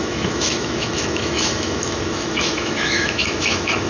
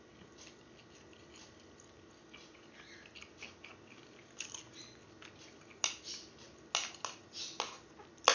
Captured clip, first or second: second